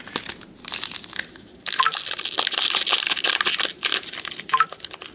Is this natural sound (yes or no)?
yes